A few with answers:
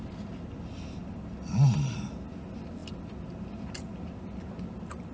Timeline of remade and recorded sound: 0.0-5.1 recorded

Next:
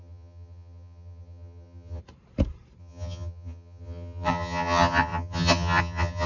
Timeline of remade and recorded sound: 0.0-2.0 remade; 2.0-2.8 recorded; 2.8-6.3 remade

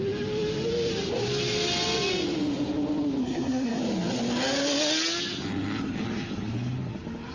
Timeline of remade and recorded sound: 0.0-3.2 recorded; 3.2-3.8 remade; 3.8-7.3 recorded

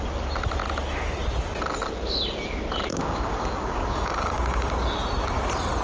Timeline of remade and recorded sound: 0.0-2.9 recorded; 2.9-4.7 remade; 4.7-5.8 recorded

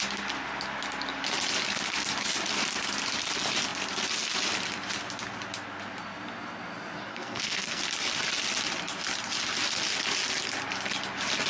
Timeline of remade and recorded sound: 0.0-7.1 recorded; 7.1-7.8 remade; 7.8-11.5 recorded

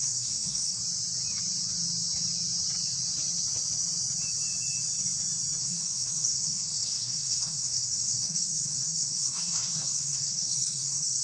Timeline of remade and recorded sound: 0.0-0.8 remade; 0.8-5.6 recorded; 5.6-11.2 remade

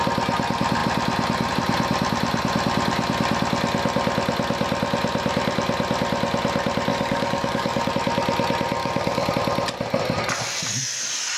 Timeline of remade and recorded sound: 0.0-6.9 recorded; 6.9-7.9 remade; 7.9-8.8 recorded; 8.8-9.3 remade; 9.3-11.4 recorded

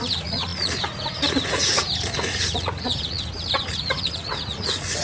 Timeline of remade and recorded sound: 0.0-5.0 remade